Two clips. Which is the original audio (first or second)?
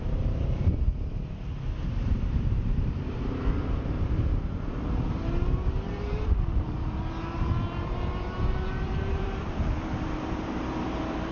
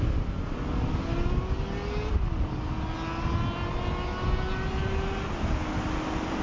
second